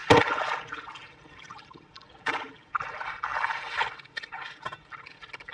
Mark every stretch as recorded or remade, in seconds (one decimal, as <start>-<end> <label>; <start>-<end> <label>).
0.0-5.5 recorded